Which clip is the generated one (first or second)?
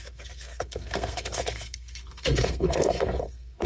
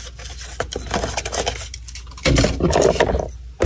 first